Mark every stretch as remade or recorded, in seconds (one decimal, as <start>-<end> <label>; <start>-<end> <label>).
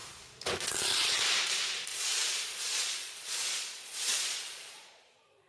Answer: 0.0-1.9 recorded; 1.9-5.5 remade